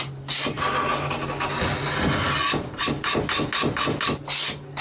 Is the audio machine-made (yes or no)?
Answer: no